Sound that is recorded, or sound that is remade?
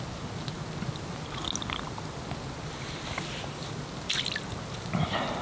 recorded